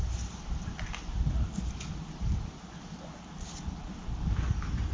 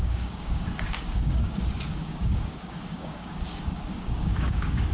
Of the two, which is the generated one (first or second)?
second